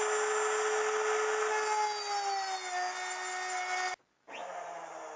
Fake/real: real